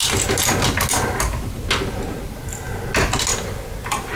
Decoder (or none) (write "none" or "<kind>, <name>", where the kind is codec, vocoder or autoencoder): none